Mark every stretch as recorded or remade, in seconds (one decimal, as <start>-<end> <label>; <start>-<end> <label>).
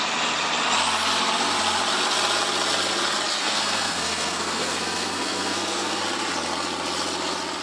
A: 0.0-3.4 recorded; 3.4-6.0 remade; 6.0-7.6 recorded